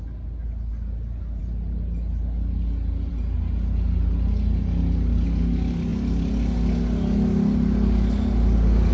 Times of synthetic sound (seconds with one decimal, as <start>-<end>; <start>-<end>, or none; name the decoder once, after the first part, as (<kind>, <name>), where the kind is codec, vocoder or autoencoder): none